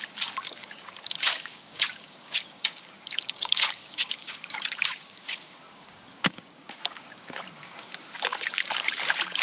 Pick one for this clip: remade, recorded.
remade